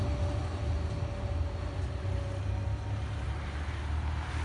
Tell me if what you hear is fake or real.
real